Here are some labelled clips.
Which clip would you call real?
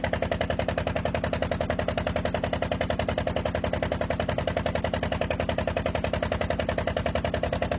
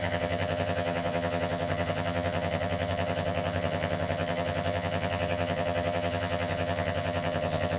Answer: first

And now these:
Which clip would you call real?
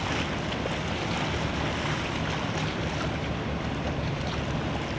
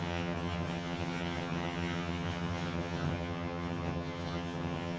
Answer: first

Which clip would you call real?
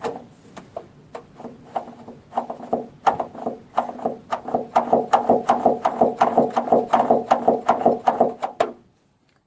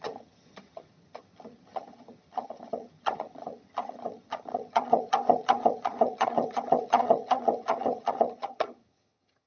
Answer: first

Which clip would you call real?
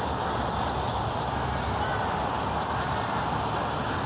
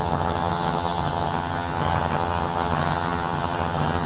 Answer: first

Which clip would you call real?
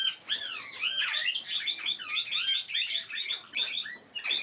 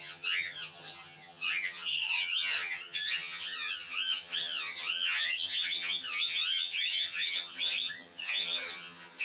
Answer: first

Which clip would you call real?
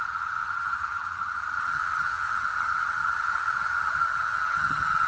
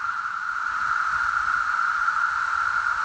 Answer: second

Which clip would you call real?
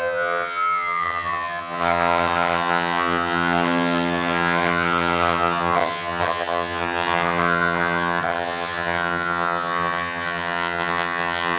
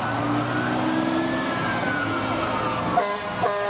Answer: second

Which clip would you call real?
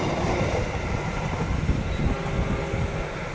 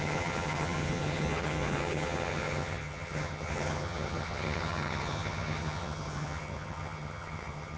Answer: first